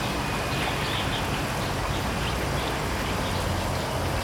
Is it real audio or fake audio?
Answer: real